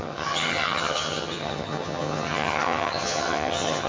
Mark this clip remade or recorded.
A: remade